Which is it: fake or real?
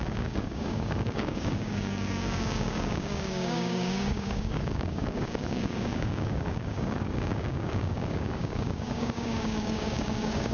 fake